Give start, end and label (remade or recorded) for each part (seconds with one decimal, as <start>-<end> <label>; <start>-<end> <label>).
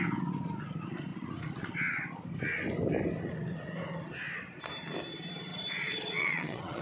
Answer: 0.0-5.5 recorded; 5.5-6.8 remade